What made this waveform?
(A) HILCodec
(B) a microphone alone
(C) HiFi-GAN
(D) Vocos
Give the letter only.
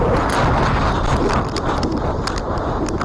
B